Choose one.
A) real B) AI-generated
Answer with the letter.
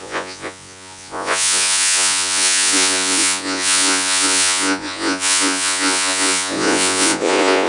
B